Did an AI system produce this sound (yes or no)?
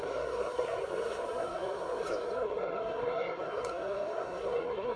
yes